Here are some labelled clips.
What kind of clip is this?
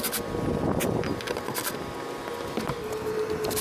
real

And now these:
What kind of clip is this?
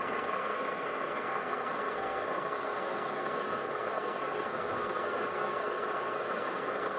fake